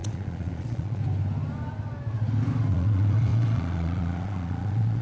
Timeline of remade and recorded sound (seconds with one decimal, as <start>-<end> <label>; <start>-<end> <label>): 0.0-1.0 remade; 1.0-2.7 recorded; 2.7-5.0 remade